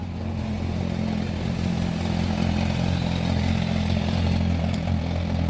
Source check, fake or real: real